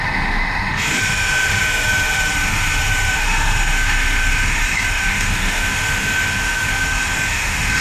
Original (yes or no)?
no